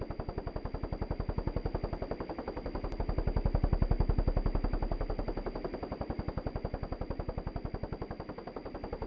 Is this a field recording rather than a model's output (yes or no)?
yes